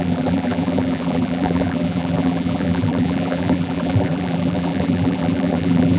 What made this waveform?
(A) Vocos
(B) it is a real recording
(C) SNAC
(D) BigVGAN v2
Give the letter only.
D